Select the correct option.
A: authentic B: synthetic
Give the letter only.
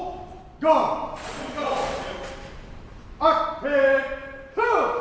B